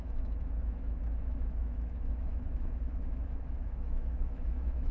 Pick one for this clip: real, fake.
fake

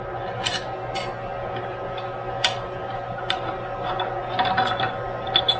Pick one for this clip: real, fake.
real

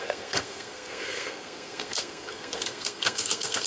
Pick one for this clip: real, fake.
fake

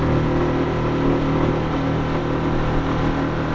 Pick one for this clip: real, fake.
real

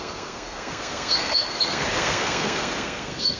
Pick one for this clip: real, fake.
fake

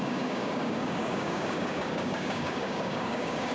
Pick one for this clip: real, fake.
fake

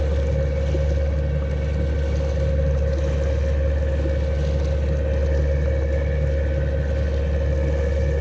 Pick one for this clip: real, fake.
real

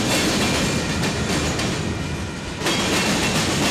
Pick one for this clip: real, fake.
real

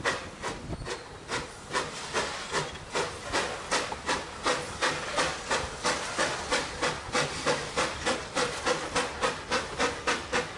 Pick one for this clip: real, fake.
real